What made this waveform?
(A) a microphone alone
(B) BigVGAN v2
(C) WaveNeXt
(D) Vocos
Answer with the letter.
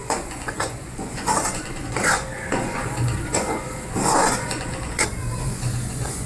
D